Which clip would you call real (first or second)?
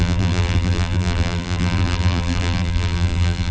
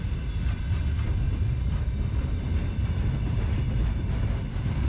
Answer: second